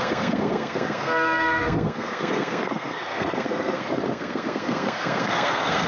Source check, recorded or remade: remade